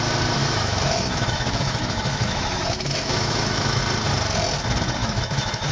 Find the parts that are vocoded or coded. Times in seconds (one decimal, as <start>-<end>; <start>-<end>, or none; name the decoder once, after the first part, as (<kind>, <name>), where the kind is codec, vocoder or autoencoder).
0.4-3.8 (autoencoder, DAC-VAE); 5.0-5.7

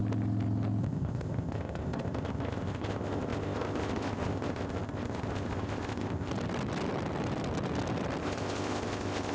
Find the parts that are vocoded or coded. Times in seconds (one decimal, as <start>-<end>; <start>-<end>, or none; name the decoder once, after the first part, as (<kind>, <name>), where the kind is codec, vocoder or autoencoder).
0.8-6.3 (codec, ZipCodec); 8.2-9.3

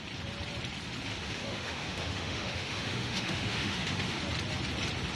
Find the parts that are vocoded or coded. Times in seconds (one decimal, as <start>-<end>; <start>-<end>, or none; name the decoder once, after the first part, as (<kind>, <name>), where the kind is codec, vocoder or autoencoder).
1.1-4.2 (autoencoder, DAC-VAE)

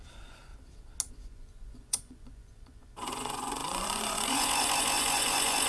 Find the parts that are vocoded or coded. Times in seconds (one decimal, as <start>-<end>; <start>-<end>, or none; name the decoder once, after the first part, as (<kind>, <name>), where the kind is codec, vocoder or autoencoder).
0.0-0.5 (vocoder, Vocos); 1.1-5.7

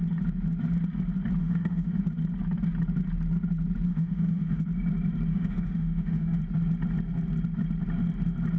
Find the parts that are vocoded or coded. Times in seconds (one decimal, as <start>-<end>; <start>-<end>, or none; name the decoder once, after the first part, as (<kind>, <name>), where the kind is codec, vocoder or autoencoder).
1.4-2.0 (autoencoder, DAC-VAE); 3.9-4.6; 5.3-6.4

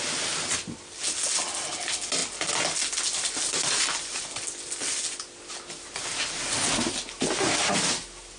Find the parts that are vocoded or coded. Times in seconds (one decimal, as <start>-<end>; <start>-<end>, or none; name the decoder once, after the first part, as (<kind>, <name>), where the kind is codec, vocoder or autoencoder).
none